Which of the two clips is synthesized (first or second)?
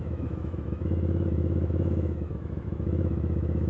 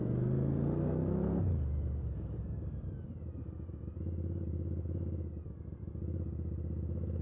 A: first